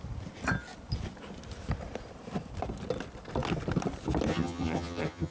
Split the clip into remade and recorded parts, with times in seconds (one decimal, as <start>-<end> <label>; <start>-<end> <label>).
0.0-4.3 recorded; 4.3-5.3 remade